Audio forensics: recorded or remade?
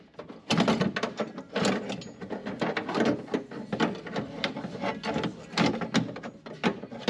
recorded